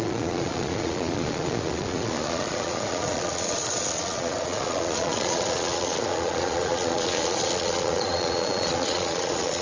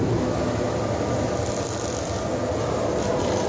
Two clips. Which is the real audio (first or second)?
second